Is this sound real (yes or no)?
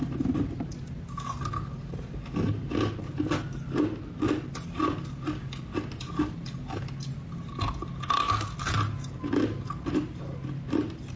yes